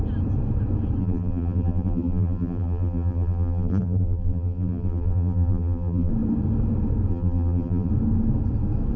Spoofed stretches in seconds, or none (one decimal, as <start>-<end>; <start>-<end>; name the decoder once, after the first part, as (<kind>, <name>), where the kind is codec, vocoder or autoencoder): 1.0-6.1 (vocoder, BigVGAN v2); 7.1-7.9